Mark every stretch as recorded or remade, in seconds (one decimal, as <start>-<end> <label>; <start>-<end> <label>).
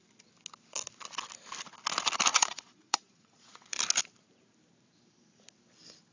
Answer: 0.0-2.3 recorded; 2.3-3.8 remade; 3.8-6.1 recorded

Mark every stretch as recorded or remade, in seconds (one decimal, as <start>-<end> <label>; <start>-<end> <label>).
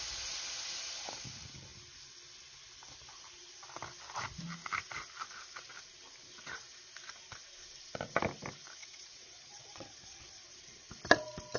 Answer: 0.0-8.8 recorded; 8.8-10.4 remade; 10.4-11.6 recorded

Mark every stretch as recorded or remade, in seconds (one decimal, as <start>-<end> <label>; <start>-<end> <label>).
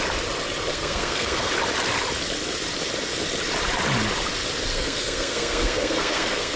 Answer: 0.0-0.7 recorded; 0.7-1.5 remade; 1.5-4.7 recorded; 4.7-6.6 remade